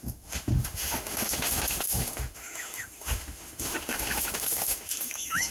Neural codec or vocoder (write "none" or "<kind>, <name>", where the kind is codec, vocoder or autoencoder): autoencoder, DAC-VAE